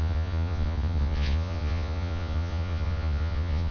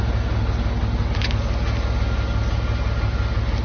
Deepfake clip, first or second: first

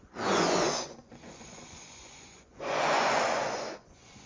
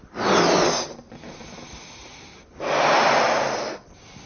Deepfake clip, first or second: first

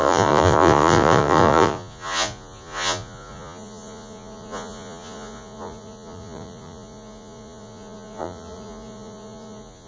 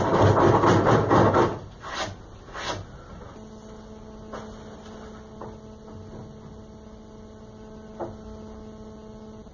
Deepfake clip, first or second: first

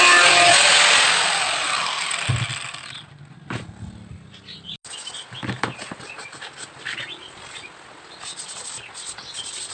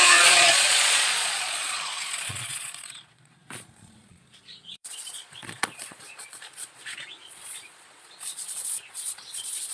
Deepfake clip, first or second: second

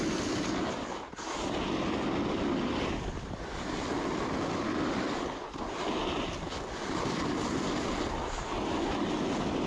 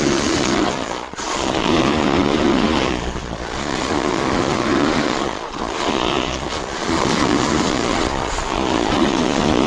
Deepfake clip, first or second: second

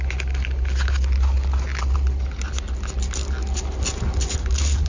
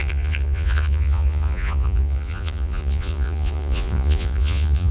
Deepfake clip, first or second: second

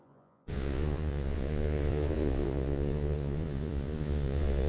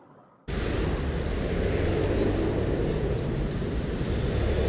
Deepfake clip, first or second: first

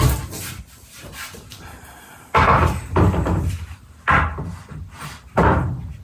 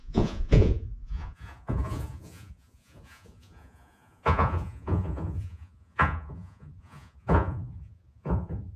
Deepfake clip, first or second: second